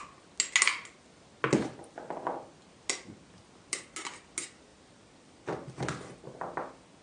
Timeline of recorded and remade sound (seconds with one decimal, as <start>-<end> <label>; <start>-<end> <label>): 0.0-7.0 recorded